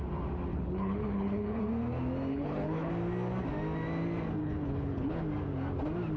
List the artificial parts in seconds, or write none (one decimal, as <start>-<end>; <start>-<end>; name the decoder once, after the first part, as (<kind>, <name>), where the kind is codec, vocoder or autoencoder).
0.5-1.6 (codec, HILCodec); 2.3-2.9; 4.4-5.2